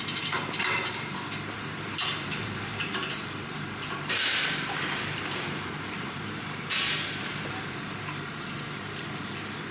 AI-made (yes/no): yes